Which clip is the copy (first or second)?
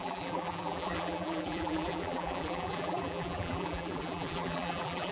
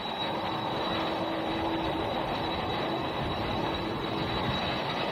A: first